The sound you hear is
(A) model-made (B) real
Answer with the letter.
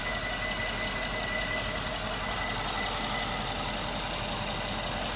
B